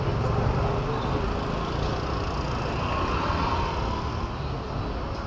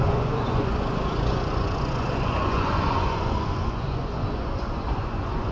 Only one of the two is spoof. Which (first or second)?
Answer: second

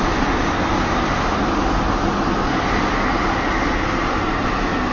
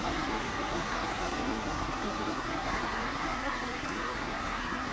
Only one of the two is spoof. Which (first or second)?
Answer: second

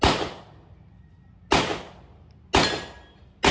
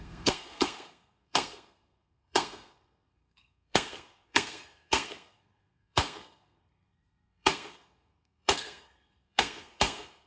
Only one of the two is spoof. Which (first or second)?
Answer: second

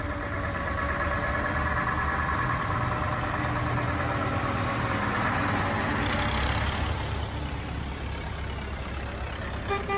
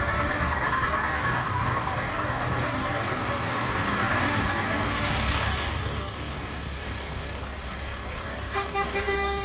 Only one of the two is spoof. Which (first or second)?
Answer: second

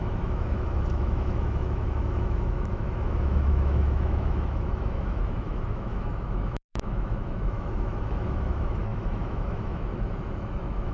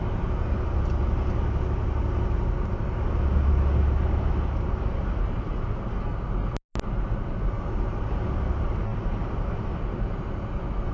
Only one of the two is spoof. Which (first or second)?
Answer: first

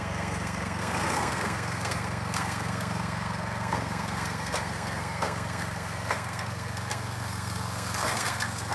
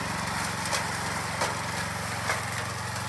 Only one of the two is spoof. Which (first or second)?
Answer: first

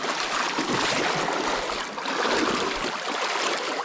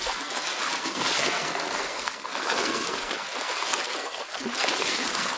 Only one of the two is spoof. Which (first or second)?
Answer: second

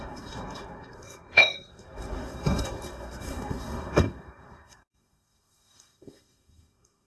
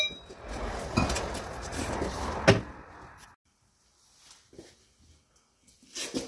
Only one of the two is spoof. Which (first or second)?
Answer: first